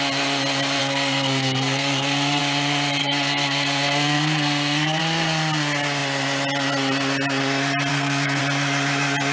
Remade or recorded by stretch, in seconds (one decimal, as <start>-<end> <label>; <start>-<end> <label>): 0.0-0.8 recorded; 0.8-2.4 remade; 2.4-3.0 recorded; 3.0-5.0 remade; 5.0-7.9 recorded; 7.9-8.4 remade; 8.4-9.3 recorded